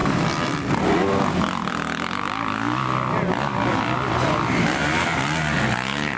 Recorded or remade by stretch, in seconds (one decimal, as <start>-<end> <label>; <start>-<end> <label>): 0.0-6.2 recorded